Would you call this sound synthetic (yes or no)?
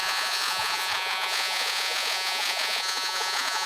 yes